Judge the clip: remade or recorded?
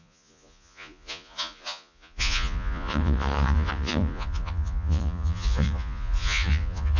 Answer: remade